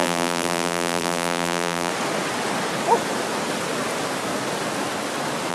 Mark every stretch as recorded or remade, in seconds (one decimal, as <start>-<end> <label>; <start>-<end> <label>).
0.0-1.9 remade; 1.9-5.5 recorded